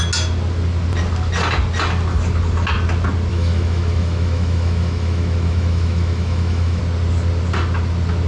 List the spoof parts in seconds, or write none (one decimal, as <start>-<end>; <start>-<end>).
3.3-6.8